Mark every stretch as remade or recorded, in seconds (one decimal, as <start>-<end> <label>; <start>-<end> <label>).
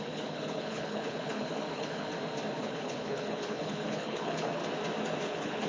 0.0-2.1 remade; 2.1-2.6 recorded; 2.6-4.6 remade; 4.6-5.2 recorded; 5.2-5.7 remade